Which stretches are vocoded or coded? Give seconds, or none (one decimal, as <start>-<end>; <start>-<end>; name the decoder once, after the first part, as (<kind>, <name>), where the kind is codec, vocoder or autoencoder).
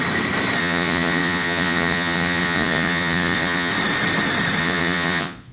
0.6-3.7 (vocoder, Vocos); 4.6-5.5